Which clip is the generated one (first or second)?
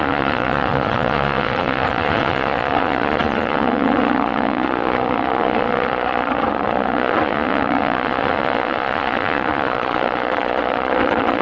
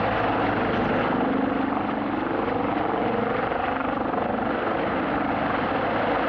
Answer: first